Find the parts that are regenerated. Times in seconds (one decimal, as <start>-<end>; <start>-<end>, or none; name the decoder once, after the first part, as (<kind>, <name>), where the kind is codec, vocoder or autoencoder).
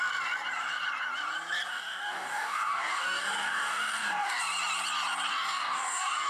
1.7-4.4 (codec, DAC); 5.3-6.3